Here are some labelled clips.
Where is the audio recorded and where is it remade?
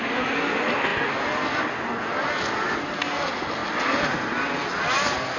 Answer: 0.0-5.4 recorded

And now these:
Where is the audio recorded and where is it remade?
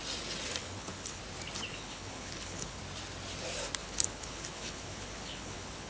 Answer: 0.0-0.6 recorded; 0.6-1.2 remade; 1.2-1.7 recorded; 1.7-2.8 remade; 2.8-3.8 recorded; 3.8-5.9 remade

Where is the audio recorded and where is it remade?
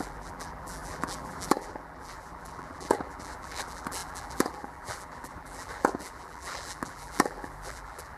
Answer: 0.0-8.2 remade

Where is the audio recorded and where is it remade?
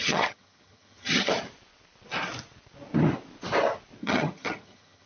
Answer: 0.0-1.3 remade; 1.3-4.0 recorded; 4.0-5.1 remade